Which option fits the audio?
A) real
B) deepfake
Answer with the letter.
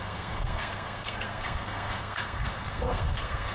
B